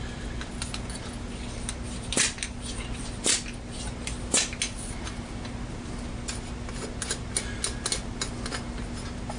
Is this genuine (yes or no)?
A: yes